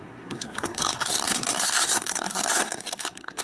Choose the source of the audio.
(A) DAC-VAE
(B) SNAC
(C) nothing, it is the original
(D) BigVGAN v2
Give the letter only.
B